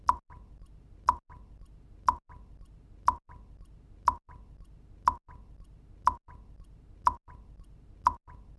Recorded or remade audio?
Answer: recorded